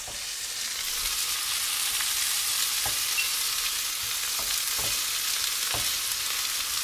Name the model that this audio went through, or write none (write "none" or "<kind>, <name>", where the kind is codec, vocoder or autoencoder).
none